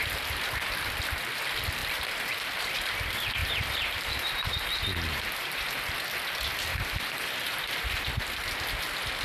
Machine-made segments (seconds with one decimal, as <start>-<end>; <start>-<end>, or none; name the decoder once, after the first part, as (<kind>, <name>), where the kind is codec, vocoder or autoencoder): 3.4-5.8 (vocoder, BigVGAN v2); 6.7-7.6